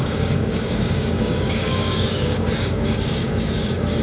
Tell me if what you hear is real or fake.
fake